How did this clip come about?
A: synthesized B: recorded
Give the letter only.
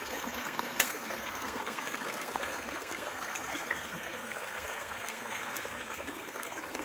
A